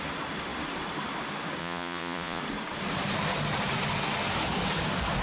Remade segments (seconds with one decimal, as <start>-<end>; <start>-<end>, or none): 1.6-2.4